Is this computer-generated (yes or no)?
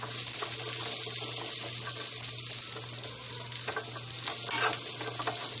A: no